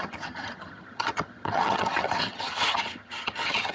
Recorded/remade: remade